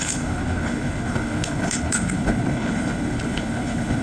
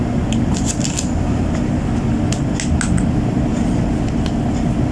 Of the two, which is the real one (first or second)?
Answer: second